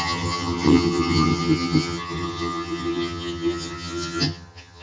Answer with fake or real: fake